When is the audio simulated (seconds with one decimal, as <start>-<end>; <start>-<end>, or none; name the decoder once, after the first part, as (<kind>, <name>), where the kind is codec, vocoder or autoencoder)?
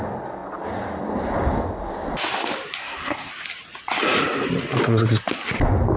2.8-3.3 (codec, SNAC)